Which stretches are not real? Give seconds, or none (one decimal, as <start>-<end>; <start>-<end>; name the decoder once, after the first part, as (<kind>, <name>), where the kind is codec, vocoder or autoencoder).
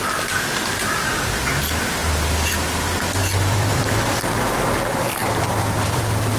3.2-4.6 (vocoder, BigVGAN v2); 5.2-6.0